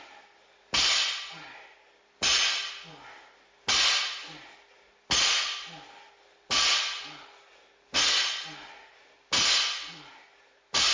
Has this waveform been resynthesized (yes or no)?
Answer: no